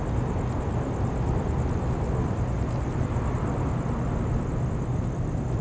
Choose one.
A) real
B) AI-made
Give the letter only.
A